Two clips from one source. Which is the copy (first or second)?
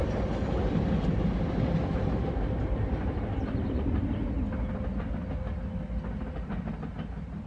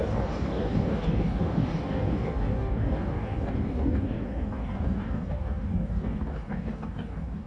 second